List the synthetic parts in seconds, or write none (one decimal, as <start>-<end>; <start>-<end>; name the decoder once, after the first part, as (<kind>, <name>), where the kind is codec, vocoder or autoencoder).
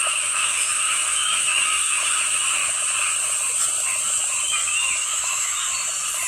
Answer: 0.0-2.6 (autoencoder, DAC-VAE); 5.0-5.7